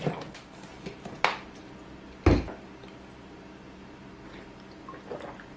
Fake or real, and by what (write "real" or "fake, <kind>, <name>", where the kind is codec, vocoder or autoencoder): real